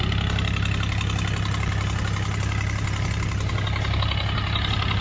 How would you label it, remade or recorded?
recorded